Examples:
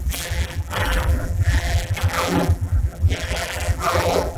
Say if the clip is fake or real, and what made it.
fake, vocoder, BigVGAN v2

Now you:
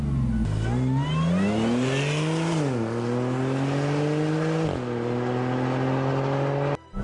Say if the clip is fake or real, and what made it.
real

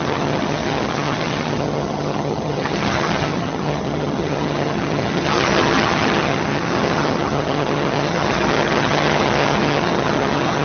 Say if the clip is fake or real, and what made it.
fake, vocoder, HiFi-GAN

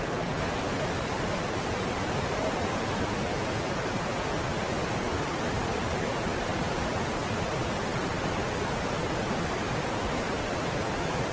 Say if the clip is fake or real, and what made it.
real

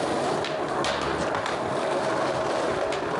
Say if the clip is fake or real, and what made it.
real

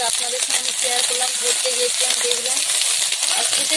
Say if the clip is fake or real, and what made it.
real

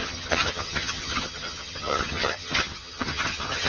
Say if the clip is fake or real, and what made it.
fake, vocoder, HiFi-GAN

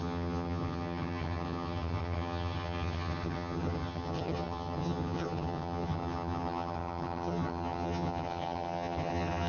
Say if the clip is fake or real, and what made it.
fake, vocoder, HiFi-GAN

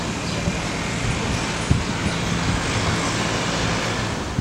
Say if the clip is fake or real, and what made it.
real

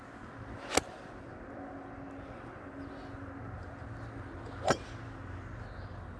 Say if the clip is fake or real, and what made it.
real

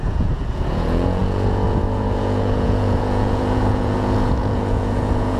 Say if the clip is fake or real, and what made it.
fake, vocoder, Vocos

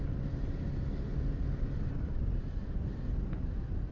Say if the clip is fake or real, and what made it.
real